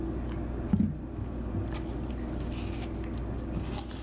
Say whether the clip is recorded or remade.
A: recorded